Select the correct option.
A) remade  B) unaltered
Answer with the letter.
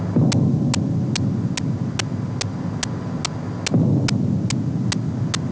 B